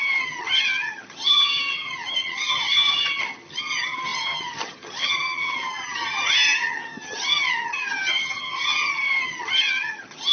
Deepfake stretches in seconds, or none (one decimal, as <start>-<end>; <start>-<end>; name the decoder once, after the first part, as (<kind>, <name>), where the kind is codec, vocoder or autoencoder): 0.0-10.3 (vocoder, HiFi-GAN)